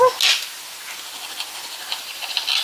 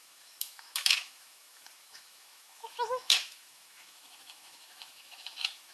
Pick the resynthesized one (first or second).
second